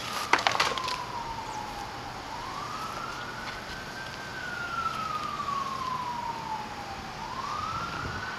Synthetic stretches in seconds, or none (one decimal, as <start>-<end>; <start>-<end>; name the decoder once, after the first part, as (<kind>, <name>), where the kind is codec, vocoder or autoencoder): none